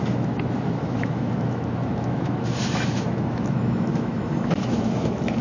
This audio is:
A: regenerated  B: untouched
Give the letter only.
A